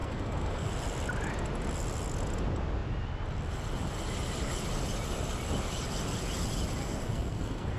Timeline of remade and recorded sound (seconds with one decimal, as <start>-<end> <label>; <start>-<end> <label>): 0.0-0.7 remade; 0.7-6.8 recorded; 6.8-7.8 remade